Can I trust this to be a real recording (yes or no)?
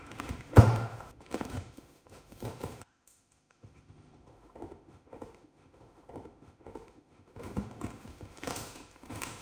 no